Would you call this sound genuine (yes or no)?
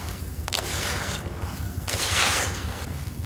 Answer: no